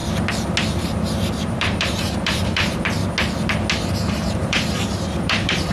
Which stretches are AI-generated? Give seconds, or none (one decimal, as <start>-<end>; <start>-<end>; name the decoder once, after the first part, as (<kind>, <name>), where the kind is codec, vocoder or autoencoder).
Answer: 0.8-3.0 (vocoder, BigVGAN v2); 3.9-5.7